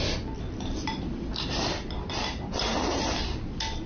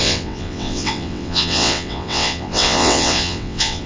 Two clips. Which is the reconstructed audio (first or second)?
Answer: second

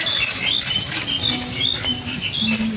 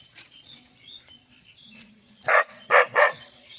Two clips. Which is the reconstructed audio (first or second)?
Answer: second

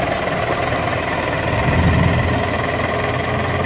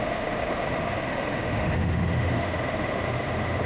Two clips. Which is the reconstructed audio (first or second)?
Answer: second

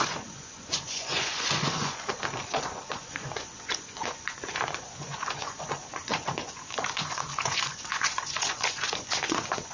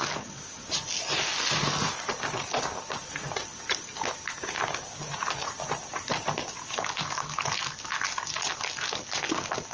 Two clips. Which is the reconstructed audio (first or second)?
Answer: first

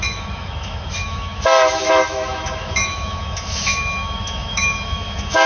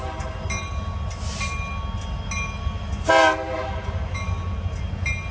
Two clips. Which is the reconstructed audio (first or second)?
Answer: first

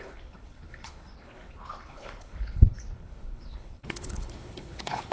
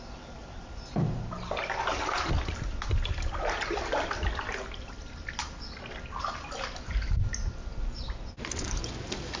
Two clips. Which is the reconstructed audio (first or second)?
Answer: first